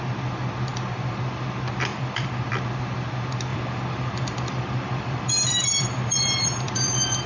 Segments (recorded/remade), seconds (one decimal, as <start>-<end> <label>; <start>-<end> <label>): 0.0-0.7 recorded; 0.7-1.2 remade; 1.2-1.9 recorded; 1.9-2.5 remade; 2.5-3.5 recorded; 3.5-7.3 remade